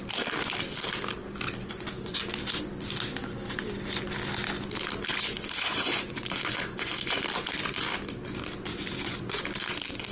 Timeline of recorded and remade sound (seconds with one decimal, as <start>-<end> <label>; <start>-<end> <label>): 0.0-1.6 recorded; 1.6-2.2 remade; 2.2-5.1 recorded; 5.1-7.2 remade; 7.2-8.7 recorded; 8.7-9.4 remade; 9.4-10.1 recorded

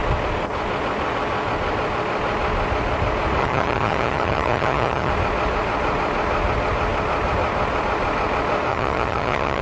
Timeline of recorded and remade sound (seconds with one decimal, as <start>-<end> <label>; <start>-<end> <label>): 0.0-3.4 recorded; 3.4-5.1 remade; 5.1-8.7 recorded; 8.7-9.6 remade

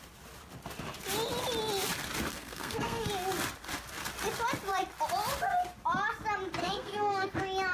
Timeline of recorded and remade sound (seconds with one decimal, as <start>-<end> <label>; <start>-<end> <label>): 0.0-2.3 recorded; 2.3-3.1 remade; 3.1-6.6 recorded; 6.6-7.3 remade; 7.3-7.7 recorded

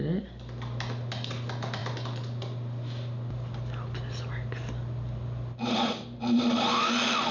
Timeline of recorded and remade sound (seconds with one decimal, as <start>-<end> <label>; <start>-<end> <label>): 0.0-7.3 recorded

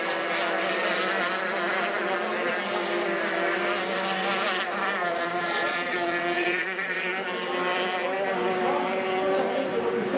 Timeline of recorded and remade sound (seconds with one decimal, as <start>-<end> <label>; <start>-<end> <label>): 0.0-5.0 recorded; 5.0-7.1 remade; 7.1-10.2 recorded